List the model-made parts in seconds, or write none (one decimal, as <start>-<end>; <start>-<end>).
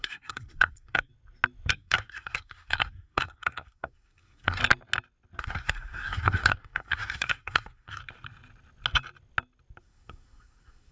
0.0-1.1; 1.7-4.6; 5.4-8.0; 9.8-10.9